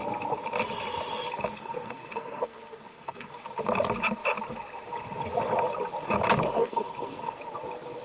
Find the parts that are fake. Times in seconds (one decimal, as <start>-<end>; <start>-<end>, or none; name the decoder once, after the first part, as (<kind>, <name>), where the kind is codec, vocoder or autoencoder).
1.5-3.3 (codec, SNAC); 6.6-7.4